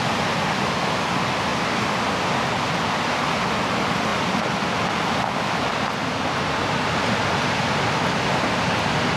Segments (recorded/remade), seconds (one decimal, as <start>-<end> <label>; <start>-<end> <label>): 0.0-9.2 recorded